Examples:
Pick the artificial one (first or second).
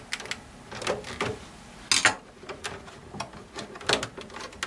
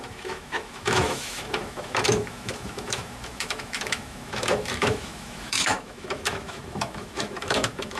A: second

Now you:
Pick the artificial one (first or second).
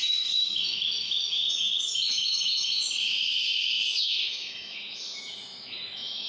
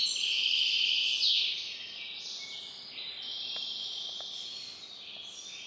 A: first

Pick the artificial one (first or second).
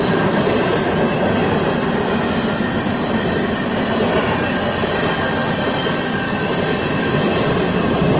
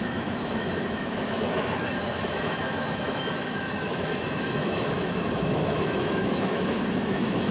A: second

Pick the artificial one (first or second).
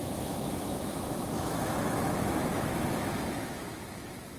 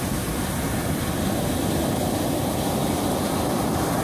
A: first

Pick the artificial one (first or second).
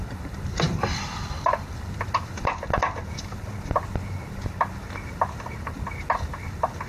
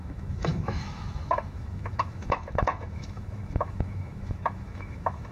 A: second